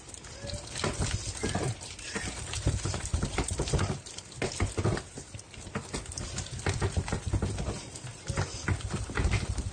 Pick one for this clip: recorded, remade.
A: recorded